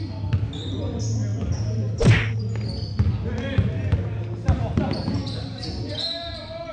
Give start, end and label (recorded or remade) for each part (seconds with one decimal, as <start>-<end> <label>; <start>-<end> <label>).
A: 0.0-6.7 recorded